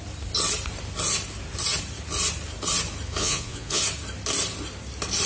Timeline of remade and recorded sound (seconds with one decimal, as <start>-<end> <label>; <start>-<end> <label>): 0.0-3.2 recorded; 3.2-3.8 remade; 3.8-5.3 recorded